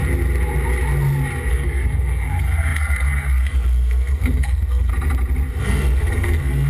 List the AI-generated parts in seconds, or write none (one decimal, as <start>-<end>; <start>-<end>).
1.5-4.9; 5.6-6.7